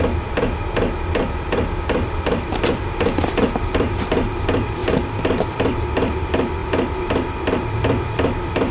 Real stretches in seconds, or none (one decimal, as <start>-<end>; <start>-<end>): 0.6-1.2; 4.8-5.5